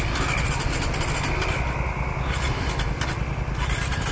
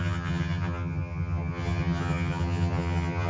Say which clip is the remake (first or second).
second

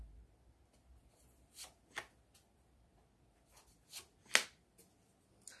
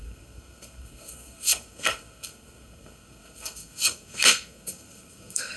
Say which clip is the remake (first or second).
second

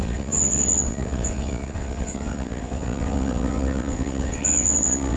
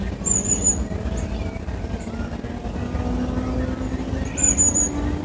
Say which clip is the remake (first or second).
first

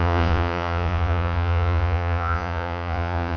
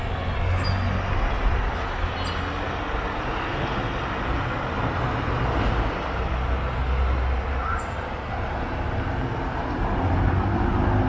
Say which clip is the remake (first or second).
first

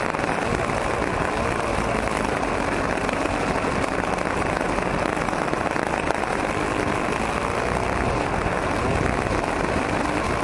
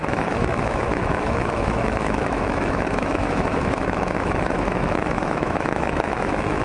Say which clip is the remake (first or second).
second